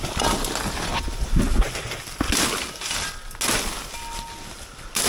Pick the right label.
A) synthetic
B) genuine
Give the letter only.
B